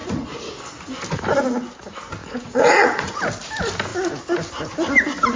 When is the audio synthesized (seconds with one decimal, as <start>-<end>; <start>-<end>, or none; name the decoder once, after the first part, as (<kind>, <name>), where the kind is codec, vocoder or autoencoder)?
0.0-0.5 (vocoder, Vocos); 2.2-3.2